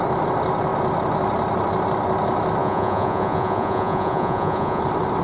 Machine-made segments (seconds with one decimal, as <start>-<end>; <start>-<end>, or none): 2.6-4.8